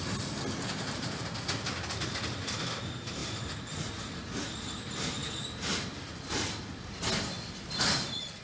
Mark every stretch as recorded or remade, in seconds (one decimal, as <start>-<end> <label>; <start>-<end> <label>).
0.0-8.4 recorded